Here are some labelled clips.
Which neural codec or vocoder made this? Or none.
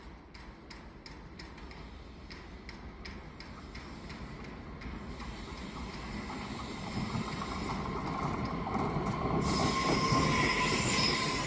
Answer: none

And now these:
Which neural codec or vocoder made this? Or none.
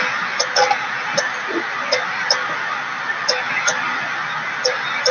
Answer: none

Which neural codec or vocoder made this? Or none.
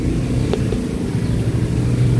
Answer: none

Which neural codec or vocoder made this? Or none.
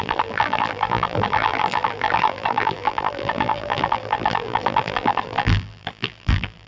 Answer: vocoder, BigVGAN v2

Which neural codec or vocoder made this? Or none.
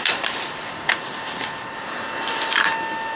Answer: none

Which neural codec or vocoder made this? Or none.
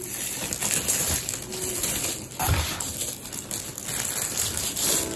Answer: none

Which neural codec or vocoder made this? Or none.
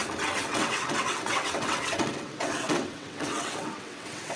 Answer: vocoder, WaveNeXt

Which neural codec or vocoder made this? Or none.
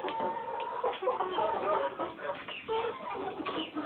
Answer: codec, DAC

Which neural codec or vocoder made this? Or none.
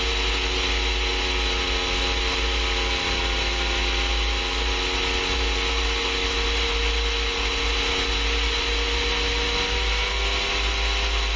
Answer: none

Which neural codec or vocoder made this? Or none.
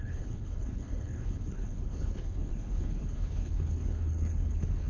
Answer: codec, HILCodec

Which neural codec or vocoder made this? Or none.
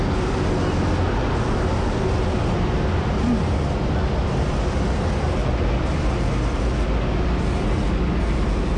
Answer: none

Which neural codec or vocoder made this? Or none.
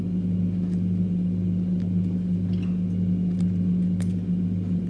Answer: none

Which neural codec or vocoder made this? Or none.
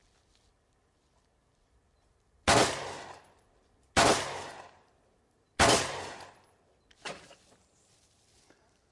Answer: none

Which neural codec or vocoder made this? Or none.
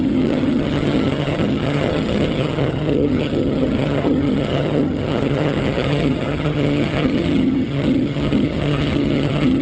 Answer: vocoder, HiFi-GAN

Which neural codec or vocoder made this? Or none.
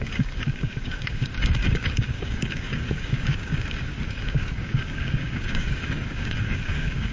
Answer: codec, DAC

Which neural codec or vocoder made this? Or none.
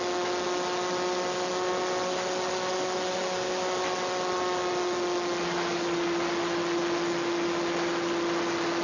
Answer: none